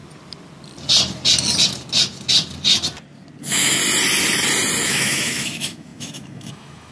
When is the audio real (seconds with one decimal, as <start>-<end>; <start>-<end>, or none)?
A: 0.0-3.4; 3.8-4.8